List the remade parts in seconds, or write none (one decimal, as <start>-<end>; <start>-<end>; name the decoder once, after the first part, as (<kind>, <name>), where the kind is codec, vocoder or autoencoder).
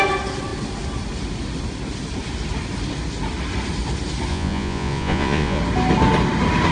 4.3-5.6 (vocoder, Vocos)